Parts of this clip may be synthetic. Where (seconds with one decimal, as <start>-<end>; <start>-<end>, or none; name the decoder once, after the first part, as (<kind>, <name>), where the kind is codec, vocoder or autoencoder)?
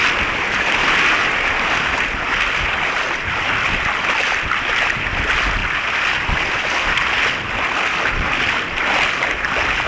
none